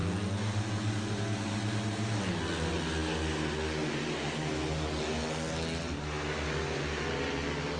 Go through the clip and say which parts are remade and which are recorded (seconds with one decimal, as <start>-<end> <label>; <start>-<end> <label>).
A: 0.0-7.8 recorded